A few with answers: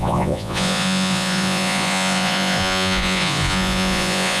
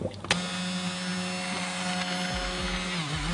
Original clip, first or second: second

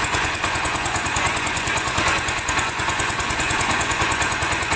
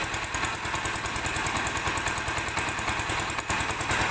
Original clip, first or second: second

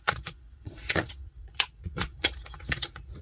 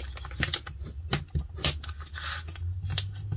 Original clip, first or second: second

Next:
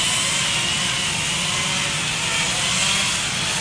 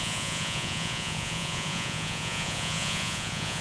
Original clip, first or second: first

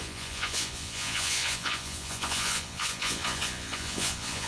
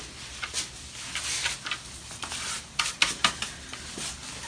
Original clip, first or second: second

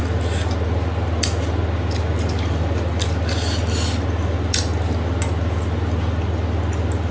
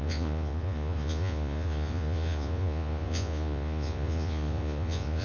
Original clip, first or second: first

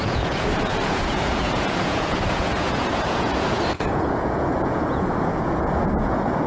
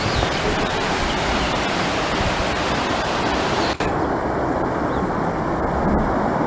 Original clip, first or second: second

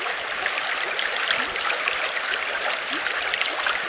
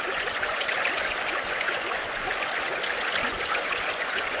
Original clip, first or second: first